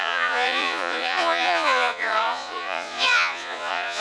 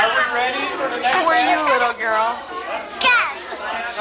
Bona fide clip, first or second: second